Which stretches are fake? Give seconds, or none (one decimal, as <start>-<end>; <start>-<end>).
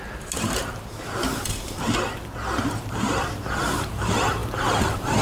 0.0-1.3; 3.4-5.2